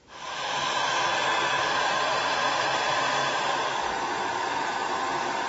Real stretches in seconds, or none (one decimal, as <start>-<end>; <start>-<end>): 0.0-5.5

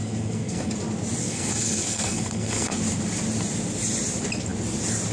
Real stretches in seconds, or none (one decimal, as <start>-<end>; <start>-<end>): 0.7-1.2; 2.8-5.1

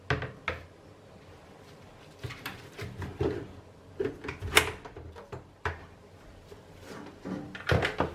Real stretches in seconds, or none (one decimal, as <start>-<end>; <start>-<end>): 0.0-8.1